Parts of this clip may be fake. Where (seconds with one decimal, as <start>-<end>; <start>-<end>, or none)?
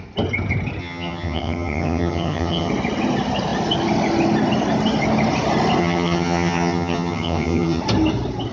0.8-2.7; 5.8-7.8